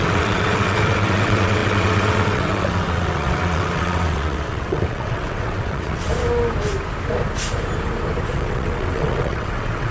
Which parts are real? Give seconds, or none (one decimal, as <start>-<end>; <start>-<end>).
6.1-8.3